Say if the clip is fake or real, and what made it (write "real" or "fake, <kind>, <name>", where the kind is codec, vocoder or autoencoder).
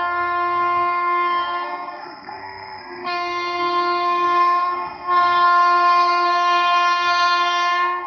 fake, codec, SNAC